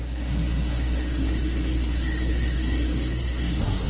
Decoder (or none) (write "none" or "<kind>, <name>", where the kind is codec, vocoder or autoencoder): codec, SNAC